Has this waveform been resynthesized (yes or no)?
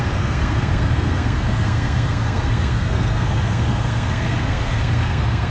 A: yes